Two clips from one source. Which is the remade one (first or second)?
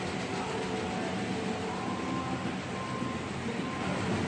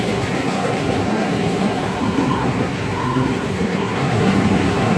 second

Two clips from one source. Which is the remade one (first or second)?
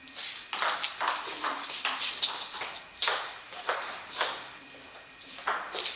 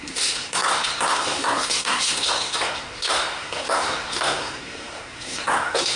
second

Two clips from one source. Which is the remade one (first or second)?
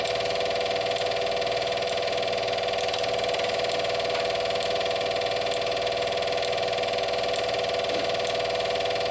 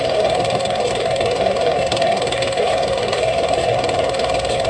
second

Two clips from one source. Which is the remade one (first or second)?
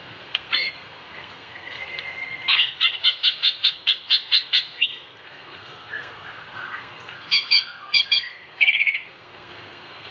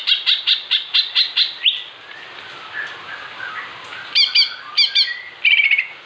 first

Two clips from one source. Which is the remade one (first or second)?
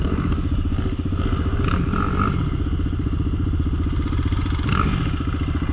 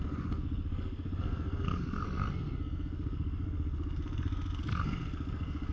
second